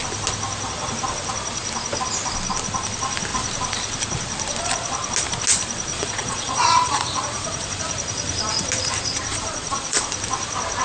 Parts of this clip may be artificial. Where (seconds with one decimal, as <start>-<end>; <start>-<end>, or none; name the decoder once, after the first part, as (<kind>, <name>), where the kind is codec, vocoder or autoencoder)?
5.9-7.8 (vocoder, Vocos); 9.3-10.0

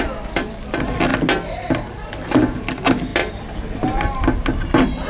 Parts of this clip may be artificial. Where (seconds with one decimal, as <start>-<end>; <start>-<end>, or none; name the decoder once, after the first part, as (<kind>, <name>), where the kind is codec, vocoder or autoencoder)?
none

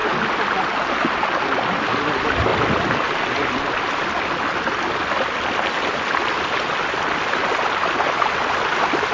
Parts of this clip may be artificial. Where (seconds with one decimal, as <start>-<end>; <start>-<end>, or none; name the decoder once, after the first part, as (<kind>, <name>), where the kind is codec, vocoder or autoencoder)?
none

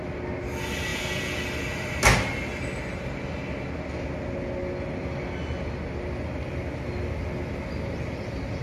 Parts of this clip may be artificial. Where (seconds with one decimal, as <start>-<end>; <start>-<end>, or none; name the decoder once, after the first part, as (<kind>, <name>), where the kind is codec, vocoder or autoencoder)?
0.9-1.4 (vocoder, Vocos)

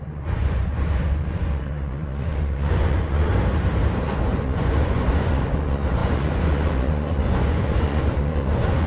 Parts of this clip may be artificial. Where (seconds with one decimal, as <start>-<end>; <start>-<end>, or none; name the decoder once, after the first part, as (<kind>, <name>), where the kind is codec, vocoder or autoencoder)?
0.0-3.3 (vocoder, Vocos); 4.0-8.9

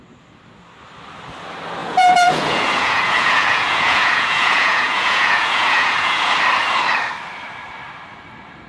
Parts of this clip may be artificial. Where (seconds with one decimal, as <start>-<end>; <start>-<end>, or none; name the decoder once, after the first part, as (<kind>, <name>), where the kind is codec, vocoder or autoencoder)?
1.8-6.3 (vocoder, Vocos)